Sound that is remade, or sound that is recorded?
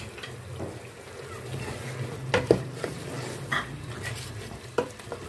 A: remade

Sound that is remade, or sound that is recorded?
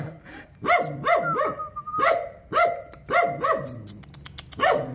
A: recorded